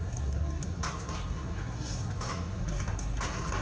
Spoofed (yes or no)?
yes